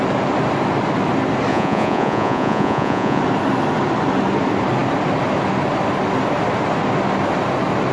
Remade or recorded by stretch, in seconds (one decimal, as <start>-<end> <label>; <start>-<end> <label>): 0.0-1.5 recorded; 1.5-3.2 remade; 3.2-7.9 recorded